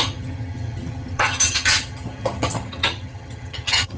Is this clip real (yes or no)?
no